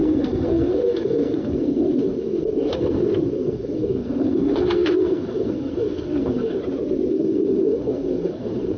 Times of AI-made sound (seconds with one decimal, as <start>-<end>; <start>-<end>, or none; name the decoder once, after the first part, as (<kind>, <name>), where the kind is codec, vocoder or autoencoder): 0.0-6.6 (codec, SNAC); 7.1-8.8

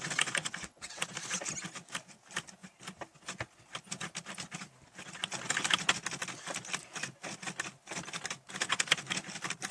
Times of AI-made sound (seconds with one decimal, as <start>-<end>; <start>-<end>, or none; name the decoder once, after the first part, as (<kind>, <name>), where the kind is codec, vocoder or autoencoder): 0.4-1.0 (vocoder, WaveNeXt)